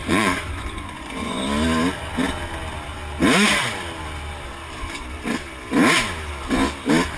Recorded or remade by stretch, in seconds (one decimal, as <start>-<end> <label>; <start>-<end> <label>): 0.0-1.4 remade; 1.4-7.2 recorded